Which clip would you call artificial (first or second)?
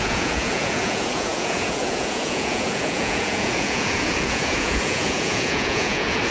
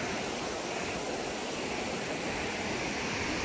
first